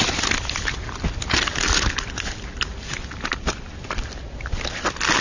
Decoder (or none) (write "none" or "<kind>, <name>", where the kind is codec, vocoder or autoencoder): none